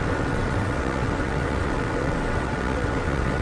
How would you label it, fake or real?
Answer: fake